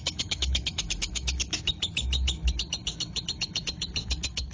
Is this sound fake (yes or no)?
yes